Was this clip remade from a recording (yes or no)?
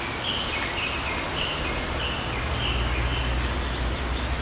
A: no